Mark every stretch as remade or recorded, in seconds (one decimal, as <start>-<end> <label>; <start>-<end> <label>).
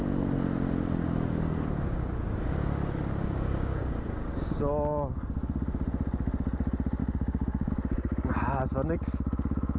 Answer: 0.0-1.0 recorded; 1.0-4.6 remade; 4.6-7.0 recorded; 7.0-7.7 remade; 7.7-9.8 recorded